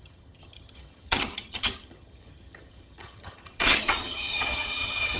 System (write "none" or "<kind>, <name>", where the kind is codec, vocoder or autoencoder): vocoder, HiFi-GAN